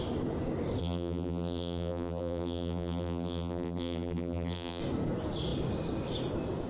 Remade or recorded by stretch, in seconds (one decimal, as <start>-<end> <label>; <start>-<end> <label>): 0.0-0.8 recorded; 0.8-4.8 remade; 4.8-6.7 recorded